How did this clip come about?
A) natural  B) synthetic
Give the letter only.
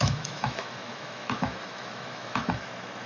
B